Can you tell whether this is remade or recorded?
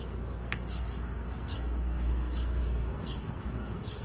remade